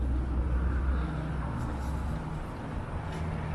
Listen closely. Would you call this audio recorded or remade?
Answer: recorded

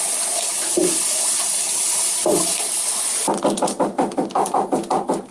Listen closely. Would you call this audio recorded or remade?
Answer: recorded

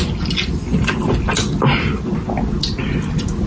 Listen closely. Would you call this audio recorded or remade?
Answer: recorded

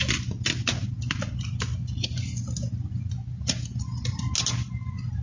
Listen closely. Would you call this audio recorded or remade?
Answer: recorded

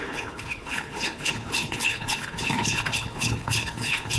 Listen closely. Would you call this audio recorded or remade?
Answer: remade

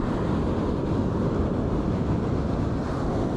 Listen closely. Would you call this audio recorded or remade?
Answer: recorded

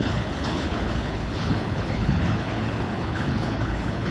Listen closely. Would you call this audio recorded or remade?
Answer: remade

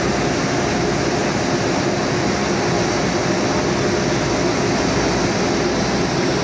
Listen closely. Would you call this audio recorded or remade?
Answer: recorded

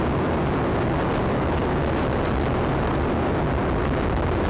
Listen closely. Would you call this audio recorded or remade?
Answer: recorded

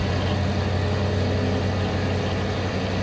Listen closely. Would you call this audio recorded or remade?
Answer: recorded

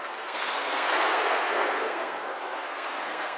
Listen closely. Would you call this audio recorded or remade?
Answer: remade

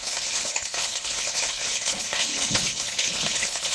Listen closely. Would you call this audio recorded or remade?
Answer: remade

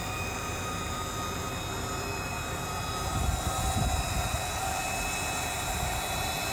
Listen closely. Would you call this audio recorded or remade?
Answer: remade